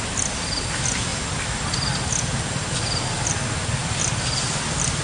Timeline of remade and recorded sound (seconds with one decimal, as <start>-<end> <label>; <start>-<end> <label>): 0.0-5.0 recorded

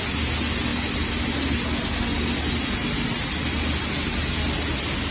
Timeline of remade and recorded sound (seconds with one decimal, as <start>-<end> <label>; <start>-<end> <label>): 0.0-5.1 recorded

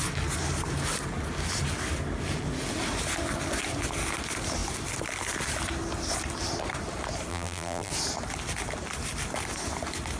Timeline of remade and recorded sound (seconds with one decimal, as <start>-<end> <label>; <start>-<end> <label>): 0.0-7.3 recorded; 7.3-7.9 remade; 7.9-10.2 recorded

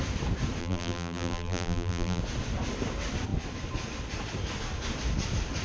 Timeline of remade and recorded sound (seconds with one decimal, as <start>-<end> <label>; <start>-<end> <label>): 0.0-0.6 recorded; 0.6-2.2 remade; 2.2-5.6 recorded

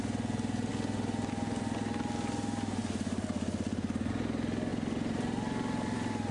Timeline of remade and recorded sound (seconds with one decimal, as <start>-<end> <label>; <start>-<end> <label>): 0.0-4.7 recorded; 4.7-6.3 remade

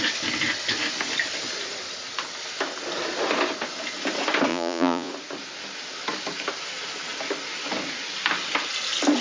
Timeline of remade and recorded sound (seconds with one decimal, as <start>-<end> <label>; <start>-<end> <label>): 0.0-4.5 recorded; 4.5-5.1 remade; 5.1-9.2 recorded

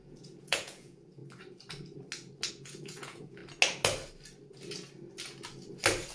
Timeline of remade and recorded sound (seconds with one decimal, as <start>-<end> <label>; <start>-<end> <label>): 0.0-1.2 remade; 1.2-2.5 recorded; 2.5-3.4 remade; 3.4-6.1 recorded